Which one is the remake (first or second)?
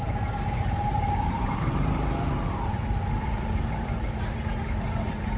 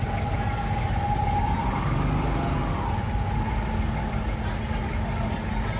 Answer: first